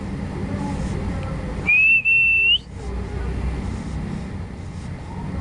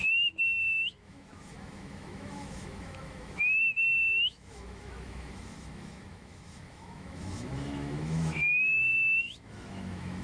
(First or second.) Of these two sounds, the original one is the first